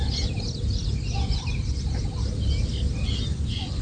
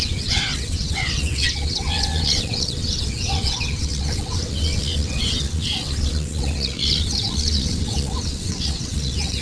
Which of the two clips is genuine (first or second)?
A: first